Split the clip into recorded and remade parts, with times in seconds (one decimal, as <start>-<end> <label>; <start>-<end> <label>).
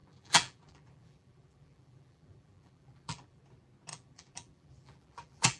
0.0-3.4 remade; 3.4-3.9 recorded; 3.9-5.6 remade